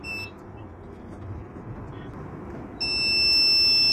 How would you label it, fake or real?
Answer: real